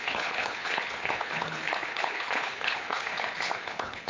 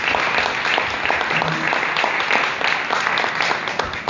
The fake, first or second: first